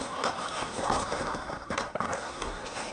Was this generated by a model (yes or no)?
yes